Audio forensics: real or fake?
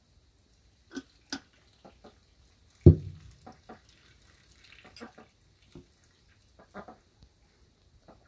real